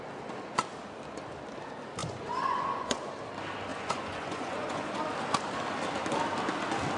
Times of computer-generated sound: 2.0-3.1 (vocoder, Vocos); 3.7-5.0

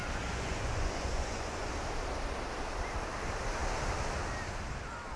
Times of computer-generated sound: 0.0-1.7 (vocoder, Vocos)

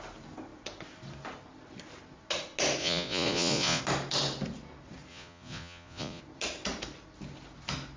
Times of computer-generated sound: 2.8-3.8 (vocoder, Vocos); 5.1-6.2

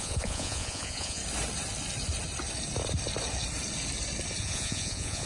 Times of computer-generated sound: 0.0-1.2 (vocoder, Vocos); 4.4-5.3

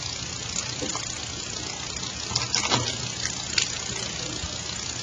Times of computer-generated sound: none